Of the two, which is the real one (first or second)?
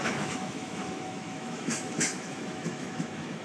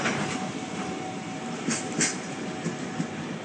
second